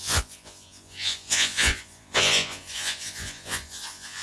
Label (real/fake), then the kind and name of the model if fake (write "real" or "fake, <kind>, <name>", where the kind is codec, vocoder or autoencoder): fake, vocoder, Vocos